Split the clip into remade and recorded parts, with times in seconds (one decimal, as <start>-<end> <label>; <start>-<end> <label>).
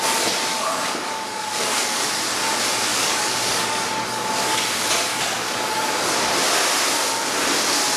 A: 0.0-0.5 recorded; 0.5-2.1 remade; 2.1-2.9 recorded; 2.9-4.6 remade; 4.6-5.1 recorded; 5.1-6.3 remade; 6.3-8.0 recorded